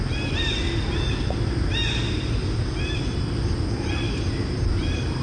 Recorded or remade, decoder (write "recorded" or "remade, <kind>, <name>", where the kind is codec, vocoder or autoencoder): recorded